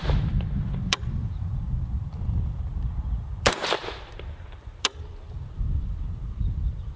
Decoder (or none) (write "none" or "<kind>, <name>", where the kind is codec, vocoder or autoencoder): vocoder, BigVGAN v2